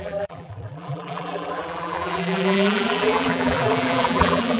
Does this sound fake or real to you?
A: fake